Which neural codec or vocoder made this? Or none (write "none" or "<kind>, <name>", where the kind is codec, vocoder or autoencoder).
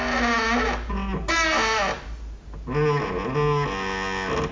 none